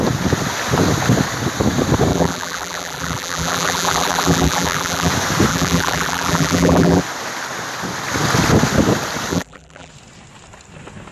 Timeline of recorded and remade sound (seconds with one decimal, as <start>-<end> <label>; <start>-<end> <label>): 0.0-2.1 recorded; 2.1-5.1 remade; 5.1-5.5 recorded; 5.5-7.0 remade; 7.0-9.3 recorded; 9.3-9.9 remade; 9.9-11.1 recorded